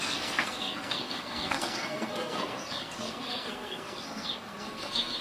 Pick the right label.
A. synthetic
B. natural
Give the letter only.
A